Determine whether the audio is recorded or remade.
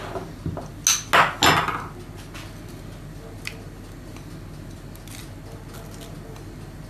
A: recorded